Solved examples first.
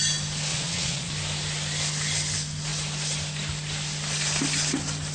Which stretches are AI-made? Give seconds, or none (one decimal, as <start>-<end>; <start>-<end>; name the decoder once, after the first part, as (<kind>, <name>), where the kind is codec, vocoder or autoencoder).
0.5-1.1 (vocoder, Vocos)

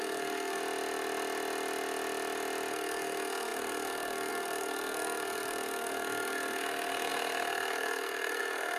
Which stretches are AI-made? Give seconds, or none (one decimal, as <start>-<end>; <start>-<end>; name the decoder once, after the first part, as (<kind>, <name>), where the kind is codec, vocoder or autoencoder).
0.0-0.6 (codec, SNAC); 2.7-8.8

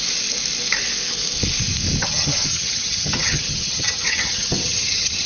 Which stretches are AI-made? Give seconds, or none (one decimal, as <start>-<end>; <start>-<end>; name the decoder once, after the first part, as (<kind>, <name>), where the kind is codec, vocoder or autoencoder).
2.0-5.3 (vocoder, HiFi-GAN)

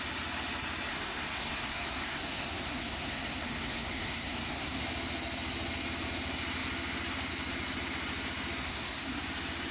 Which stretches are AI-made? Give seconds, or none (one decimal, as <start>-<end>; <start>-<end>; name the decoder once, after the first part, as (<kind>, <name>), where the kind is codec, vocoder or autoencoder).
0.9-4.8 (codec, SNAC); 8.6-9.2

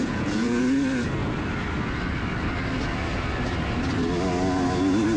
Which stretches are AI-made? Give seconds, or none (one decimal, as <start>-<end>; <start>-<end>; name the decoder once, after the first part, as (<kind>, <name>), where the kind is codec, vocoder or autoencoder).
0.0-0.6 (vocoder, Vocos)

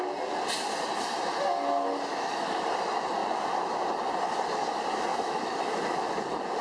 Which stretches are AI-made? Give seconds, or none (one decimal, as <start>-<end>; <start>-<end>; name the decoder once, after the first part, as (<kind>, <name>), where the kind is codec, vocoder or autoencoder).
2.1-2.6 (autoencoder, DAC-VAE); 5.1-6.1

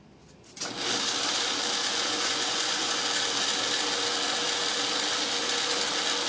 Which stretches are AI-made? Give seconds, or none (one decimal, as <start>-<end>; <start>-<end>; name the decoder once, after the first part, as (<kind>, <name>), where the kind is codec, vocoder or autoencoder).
1.8-3.0 (vocoder, Vocos)

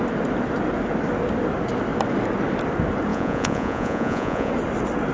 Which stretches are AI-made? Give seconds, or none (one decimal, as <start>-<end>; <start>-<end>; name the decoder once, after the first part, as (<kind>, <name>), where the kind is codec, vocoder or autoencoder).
3.1-4.5 (vocoder, Vocos)